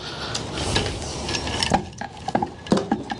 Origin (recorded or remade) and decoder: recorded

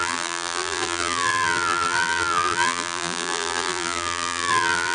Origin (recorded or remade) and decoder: remade, vocoder, BigVGAN v2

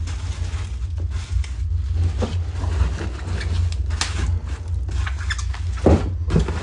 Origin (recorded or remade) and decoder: recorded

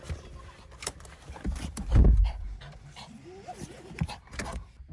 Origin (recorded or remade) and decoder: remade, vocoder, BigVGAN v2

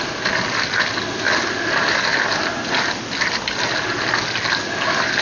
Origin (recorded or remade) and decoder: recorded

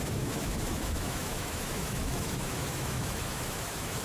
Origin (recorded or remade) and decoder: remade, autoencoder, DAC-VAE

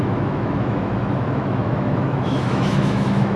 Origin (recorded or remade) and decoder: remade, autoencoder, DAC-VAE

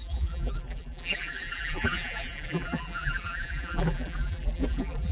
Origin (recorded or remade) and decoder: remade, vocoder, BigVGAN v2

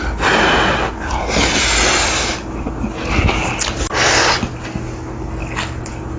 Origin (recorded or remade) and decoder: recorded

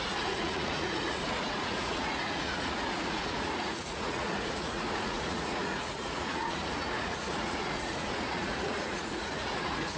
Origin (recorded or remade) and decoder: remade, vocoder, Vocos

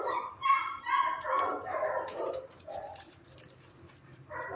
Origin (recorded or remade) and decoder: remade, vocoder, BigVGAN v2